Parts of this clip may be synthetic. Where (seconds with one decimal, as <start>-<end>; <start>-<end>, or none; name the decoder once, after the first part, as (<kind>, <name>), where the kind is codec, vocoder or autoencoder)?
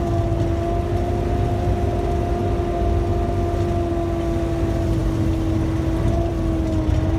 none